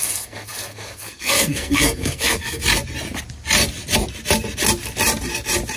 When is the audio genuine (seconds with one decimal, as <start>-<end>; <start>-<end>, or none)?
2.6-5.8